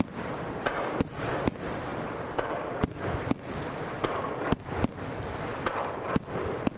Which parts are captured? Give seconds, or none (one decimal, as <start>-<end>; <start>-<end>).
0.0-6.8